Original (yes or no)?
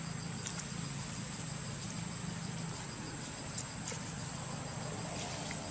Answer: yes